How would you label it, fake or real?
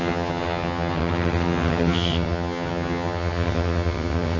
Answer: fake